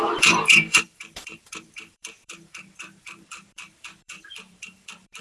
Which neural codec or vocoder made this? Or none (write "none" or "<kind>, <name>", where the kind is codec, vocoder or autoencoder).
vocoder, BigVGAN v2